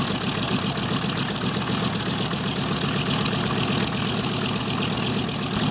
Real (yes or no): yes